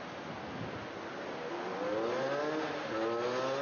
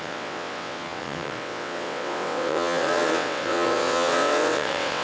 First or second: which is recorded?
first